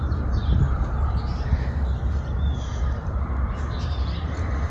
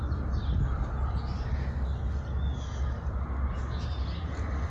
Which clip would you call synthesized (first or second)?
first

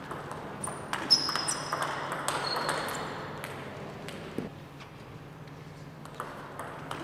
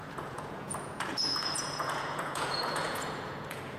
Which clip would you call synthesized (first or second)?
second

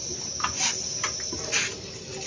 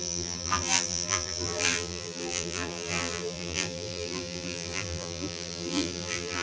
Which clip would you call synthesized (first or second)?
second